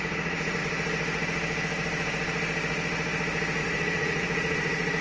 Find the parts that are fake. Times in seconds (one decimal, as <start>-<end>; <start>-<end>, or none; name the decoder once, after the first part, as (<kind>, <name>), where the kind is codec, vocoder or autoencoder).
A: 0.0-0.6 (vocoder, Vocos); 3.6-5.0